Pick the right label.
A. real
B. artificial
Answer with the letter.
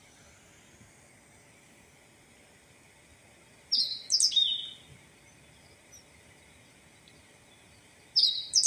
A